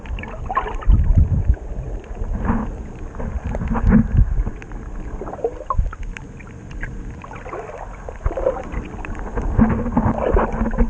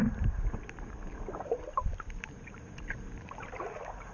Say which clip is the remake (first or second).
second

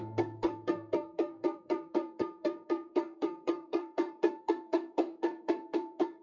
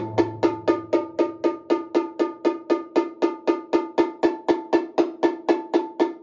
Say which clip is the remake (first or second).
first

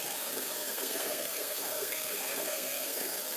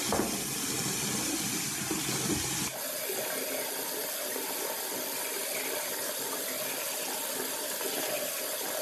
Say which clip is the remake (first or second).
first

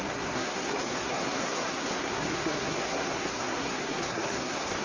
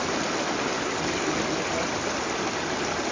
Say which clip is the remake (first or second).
first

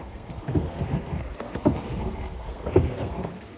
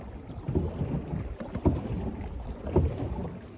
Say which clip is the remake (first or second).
first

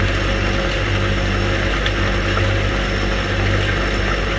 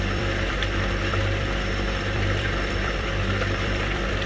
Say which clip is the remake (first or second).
second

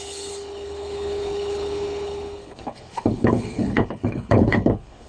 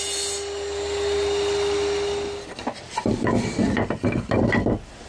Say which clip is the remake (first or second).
first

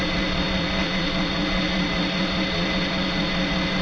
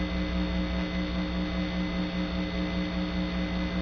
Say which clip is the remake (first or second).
first